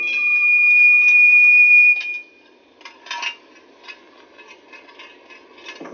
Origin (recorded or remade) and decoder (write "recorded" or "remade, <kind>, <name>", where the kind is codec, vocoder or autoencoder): recorded